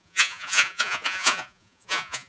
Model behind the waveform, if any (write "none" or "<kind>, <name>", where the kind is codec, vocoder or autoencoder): vocoder, Vocos